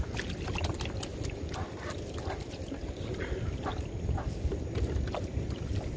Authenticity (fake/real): real